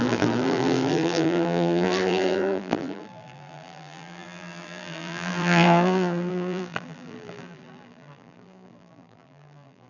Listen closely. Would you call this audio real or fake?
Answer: fake